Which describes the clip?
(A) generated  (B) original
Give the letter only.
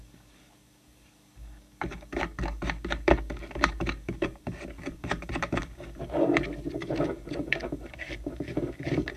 A